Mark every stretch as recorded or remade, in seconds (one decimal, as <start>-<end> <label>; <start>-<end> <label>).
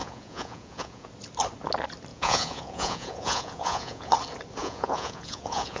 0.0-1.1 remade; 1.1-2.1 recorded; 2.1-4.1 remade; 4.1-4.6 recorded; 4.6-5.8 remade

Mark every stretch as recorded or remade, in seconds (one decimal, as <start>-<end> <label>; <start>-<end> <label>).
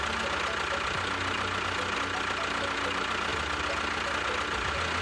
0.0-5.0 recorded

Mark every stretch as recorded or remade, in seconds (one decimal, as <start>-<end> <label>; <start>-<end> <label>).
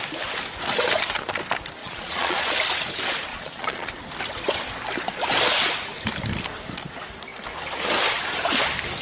0.0-1.8 recorded; 1.8-2.5 remade; 2.5-3.3 recorded; 3.3-3.9 remade; 3.9-9.0 recorded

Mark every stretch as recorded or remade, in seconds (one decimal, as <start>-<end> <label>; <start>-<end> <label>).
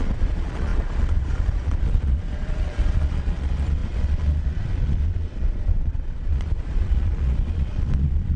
0.0-8.4 remade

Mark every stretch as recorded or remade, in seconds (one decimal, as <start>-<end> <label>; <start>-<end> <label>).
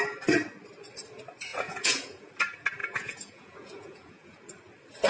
0.0-1.5 recorded; 1.5-2.3 remade; 2.3-2.8 recorded; 2.8-4.4 remade; 4.4-5.1 recorded